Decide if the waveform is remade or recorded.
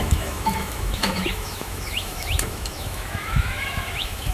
remade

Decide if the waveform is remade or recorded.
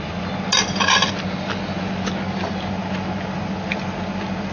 recorded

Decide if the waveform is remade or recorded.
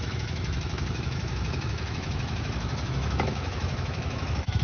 remade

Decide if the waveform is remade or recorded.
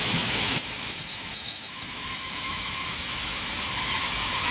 remade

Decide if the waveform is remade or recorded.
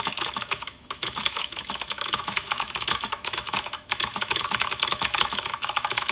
remade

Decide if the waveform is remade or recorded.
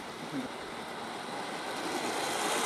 recorded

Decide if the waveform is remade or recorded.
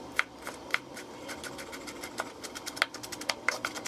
recorded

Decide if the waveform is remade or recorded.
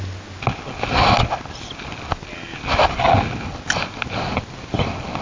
recorded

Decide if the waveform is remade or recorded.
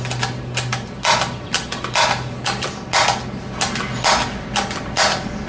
recorded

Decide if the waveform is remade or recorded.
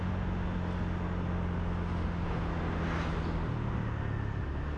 recorded